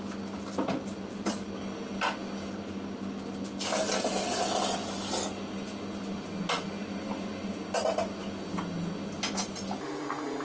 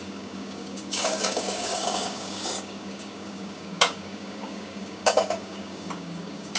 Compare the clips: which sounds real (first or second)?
first